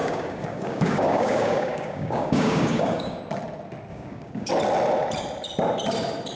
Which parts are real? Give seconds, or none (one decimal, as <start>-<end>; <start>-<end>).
3.2-3.9; 4.5-6.4

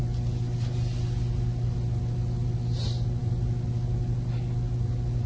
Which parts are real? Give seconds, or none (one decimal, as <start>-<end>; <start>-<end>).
0.0-5.3

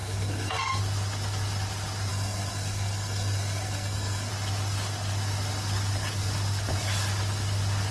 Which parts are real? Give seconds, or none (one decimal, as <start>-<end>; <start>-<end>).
0.8-2.1; 4.3-7.9

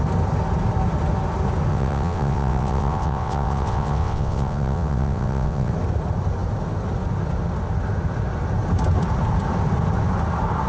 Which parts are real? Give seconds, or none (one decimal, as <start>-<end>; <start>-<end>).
0.0-1.7; 5.7-10.7

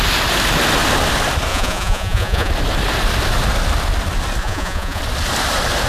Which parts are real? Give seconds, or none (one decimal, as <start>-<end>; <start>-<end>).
0.0-1.5; 2.5-4.4; 5.0-5.9

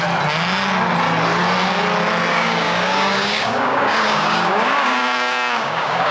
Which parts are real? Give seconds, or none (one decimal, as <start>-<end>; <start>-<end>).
0.0-2.3

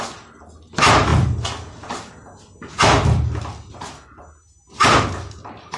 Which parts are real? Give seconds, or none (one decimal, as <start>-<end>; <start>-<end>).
0.0-5.8